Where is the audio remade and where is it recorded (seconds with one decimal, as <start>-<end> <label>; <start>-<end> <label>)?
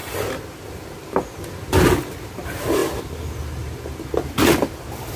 0.0-5.2 recorded